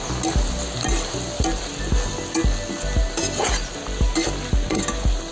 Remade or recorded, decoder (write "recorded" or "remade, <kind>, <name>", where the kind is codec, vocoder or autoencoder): recorded